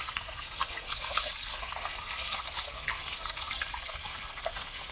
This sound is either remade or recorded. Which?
remade